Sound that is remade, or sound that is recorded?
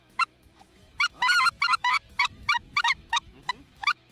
remade